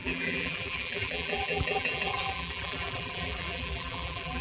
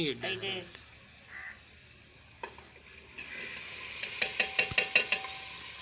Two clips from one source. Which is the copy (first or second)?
first